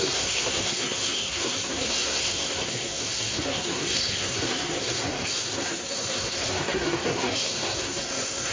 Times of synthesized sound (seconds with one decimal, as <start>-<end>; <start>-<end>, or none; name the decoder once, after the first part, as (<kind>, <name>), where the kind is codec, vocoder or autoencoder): 0.0-8.5 (codec, SNAC)